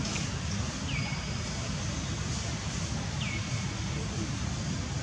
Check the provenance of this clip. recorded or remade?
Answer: recorded